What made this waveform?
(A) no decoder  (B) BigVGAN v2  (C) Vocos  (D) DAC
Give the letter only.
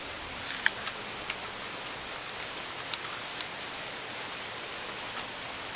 A